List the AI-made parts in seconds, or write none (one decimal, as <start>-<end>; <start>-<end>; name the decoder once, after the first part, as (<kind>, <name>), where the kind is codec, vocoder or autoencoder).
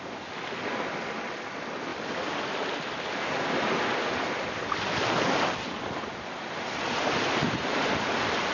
none